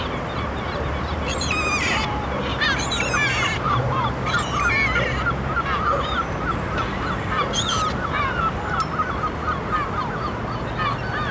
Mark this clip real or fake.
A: real